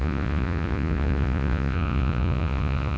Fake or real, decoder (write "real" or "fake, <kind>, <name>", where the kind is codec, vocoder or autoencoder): fake, vocoder, Vocos